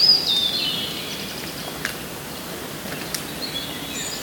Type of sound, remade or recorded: recorded